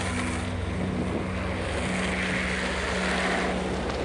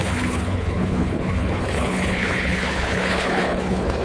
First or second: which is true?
first